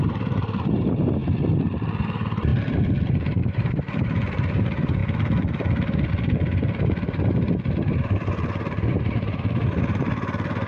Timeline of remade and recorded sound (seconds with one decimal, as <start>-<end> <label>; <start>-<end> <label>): 0.0-1.2 remade; 1.2-2.0 recorded; 2.0-2.5 remade; 2.5-3.1 recorded; 3.1-5.0 remade; 5.0-6.1 recorded; 6.1-10.7 remade